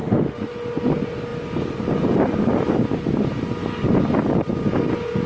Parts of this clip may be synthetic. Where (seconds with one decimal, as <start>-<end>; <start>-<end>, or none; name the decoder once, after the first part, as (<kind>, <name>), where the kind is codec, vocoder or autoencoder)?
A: 0.0-0.5 (autoencoder, DAC-VAE)